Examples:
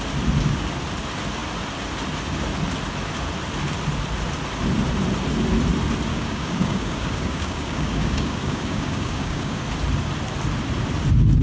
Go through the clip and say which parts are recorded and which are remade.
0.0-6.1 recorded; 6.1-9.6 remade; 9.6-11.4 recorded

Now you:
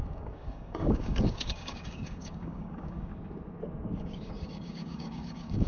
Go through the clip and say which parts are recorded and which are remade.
0.0-3.1 remade; 3.1-4.0 recorded; 4.0-5.7 remade

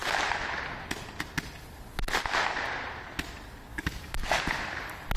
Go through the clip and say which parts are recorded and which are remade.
0.0-3.7 recorded; 3.7-4.4 remade; 4.4-5.2 recorded

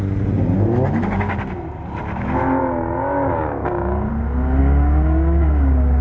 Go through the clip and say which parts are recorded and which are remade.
0.0-2.6 recorded; 2.6-4.1 remade; 4.1-4.6 recorded; 4.6-6.0 remade

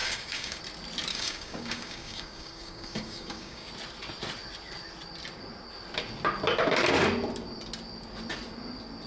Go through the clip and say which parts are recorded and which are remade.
0.0-0.6 remade; 0.6-1.1 recorded; 1.1-3.7 remade; 3.7-9.1 recorded

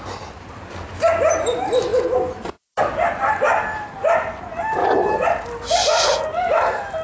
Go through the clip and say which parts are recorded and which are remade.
0.0-7.0 recorded

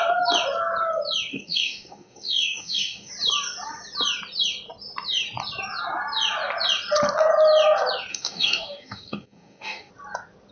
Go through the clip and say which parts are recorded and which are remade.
0.0-1.3 recorded; 1.3-3.1 remade; 3.1-8.1 recorded; 8.1-9.9 remade; 9.9-10.5 recorded

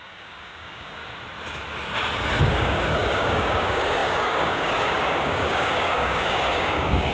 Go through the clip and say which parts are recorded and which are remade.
0.0-1.0 remade; 1.0-2.4 recorded; 2.4-7.1 remade